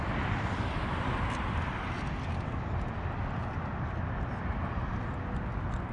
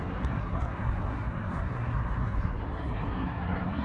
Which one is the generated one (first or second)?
second